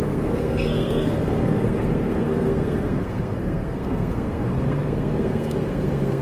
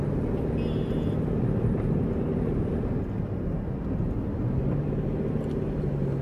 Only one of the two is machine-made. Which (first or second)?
first